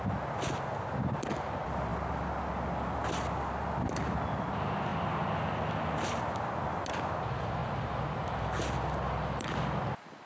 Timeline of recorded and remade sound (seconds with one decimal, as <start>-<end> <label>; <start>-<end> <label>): 0.0-10.3 recorded